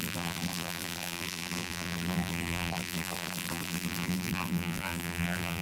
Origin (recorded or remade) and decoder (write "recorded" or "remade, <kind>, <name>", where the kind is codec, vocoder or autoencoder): remade, vocoder, BigVGAN v2